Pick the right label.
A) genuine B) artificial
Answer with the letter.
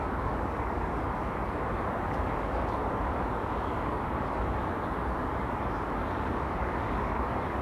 B